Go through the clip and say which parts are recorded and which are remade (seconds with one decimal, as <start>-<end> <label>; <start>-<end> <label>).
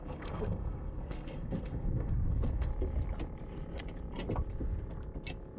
0.0-2.7 remade; 2.7-5.6 recorded